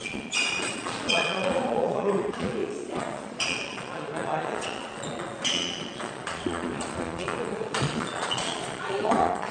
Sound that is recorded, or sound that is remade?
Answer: remade